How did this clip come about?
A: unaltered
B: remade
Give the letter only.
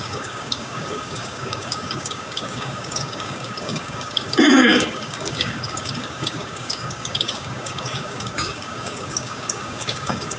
B